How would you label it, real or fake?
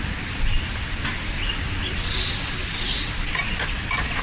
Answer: real